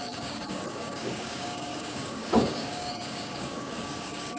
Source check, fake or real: fake